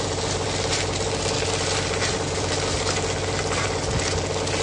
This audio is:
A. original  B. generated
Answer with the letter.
A